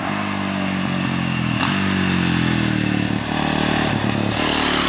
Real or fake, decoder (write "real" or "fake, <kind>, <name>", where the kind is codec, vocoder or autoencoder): real